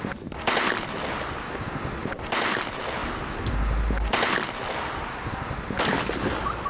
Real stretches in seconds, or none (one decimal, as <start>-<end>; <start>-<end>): 0.0-2.0; 2.6-6.7